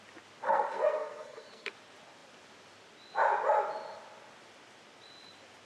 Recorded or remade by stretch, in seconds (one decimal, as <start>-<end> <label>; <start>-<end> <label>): 0.0-0.4 recorded; 0.4-1.7 remade; 1.7-5.7 recorded